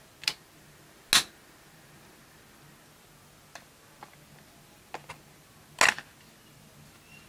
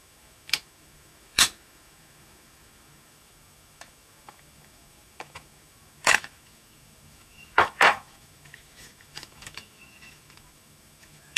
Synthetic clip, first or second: second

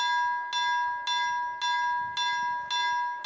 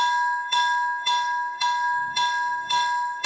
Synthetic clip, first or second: second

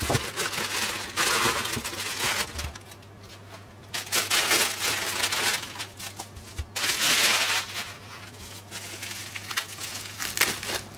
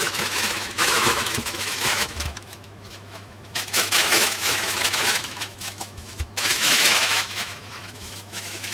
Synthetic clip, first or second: second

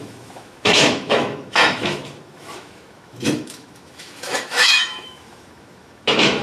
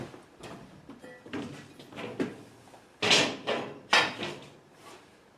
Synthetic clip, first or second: first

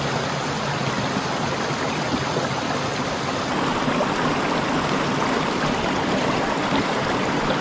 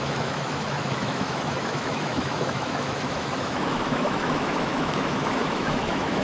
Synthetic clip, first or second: second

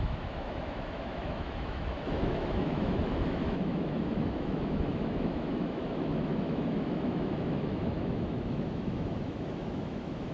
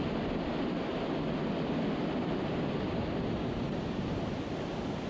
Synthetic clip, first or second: first